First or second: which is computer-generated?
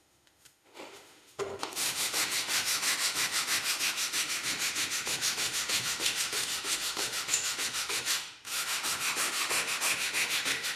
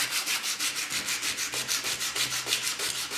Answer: first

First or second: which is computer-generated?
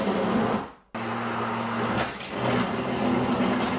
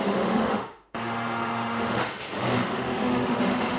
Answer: second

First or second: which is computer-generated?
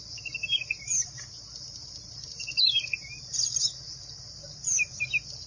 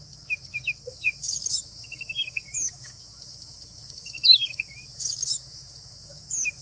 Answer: second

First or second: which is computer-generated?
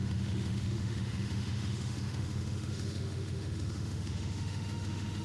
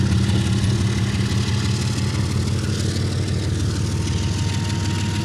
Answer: first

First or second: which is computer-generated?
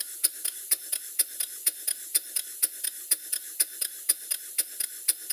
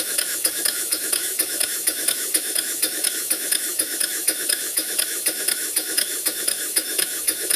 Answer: second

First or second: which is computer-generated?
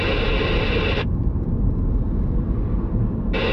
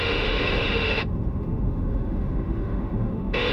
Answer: second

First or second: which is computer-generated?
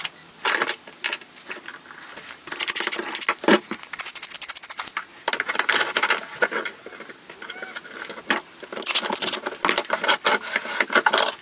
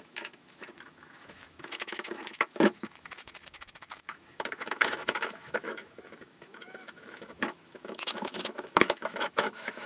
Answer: second